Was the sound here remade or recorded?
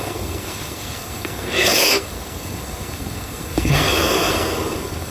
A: remade